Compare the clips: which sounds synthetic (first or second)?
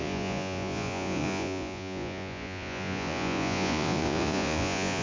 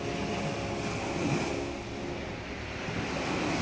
first